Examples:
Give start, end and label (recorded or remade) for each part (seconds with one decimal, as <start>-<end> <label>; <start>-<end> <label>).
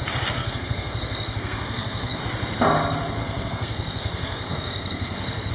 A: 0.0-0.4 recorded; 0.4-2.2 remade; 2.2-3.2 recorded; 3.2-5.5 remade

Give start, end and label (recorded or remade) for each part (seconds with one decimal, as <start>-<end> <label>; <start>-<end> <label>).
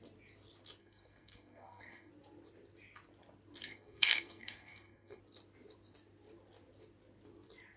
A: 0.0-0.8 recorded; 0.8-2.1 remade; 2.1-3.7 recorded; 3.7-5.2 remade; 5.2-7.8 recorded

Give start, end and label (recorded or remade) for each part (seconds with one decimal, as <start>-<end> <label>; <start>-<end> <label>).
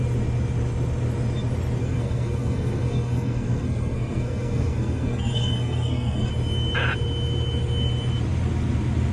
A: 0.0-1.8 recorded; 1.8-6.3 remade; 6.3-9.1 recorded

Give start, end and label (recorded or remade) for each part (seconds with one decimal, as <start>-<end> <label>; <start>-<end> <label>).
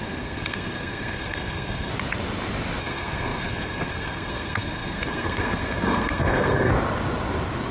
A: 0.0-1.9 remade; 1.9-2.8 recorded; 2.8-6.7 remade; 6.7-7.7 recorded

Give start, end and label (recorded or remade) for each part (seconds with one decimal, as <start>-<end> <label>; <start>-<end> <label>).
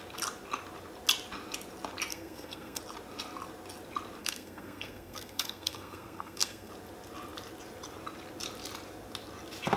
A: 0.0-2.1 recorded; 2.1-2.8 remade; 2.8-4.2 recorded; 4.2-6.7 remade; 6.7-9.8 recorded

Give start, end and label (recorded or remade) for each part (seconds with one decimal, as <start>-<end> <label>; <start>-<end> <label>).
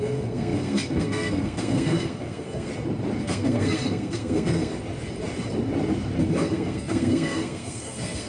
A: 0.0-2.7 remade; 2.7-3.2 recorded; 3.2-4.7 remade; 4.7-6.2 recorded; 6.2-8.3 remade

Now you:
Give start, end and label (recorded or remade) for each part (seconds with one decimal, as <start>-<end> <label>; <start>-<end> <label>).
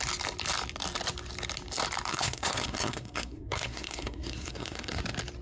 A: 0.0-2.1 recorded; 2.1-5.0 remade; 5.0-5.4 recorded